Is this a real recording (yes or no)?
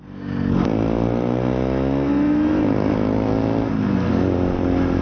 yes